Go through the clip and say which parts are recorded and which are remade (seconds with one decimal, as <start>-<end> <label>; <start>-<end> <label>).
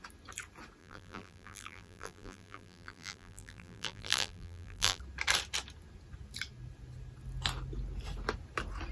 0.0-0.8 recorded; 0.8-5.0 remade; 5.0-8.9 recorded